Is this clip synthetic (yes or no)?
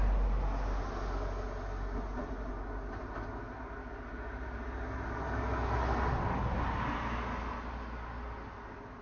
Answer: no